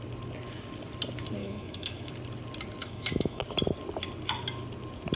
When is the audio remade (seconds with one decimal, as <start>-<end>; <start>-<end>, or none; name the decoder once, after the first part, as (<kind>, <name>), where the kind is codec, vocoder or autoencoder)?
1.4-2.1 (autoencoder, DAC-VAE); 2.8-3.4